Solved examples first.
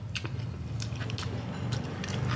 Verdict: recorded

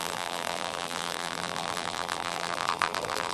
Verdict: remade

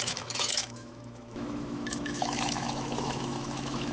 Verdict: remade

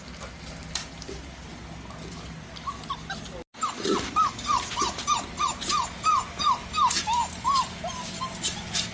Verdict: recorded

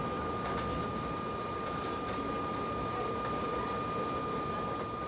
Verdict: recorded